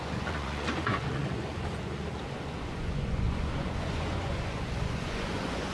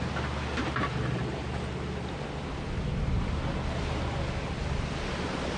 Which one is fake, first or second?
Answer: first